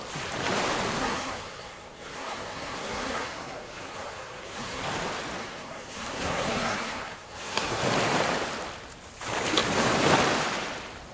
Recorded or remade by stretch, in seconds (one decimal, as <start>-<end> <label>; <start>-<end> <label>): 0.0-1.0 recorded; 1.0-4.8 remade; 4.8-5.4 recorded; 5.4-7.8 remade; 7.8-11.1 recorded

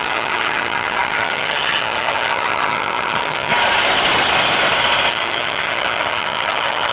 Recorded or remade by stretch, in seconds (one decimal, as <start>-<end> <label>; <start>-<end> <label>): 0.0-3.5 remade; 3.5-5.1 recorded; 5.1-6.9 remade

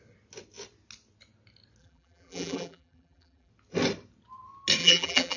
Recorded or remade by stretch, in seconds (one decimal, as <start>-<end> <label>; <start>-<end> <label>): 0.0-1.8 recorded; 1.8-3.5 remade; 3.5-4.8 recorded; 4.8-5.4 remade